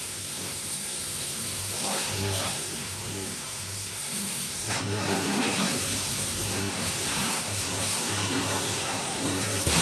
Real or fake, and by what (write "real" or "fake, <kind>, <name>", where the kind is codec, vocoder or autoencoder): fake, codec, SNAC